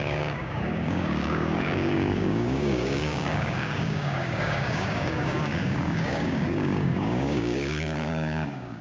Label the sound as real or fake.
fake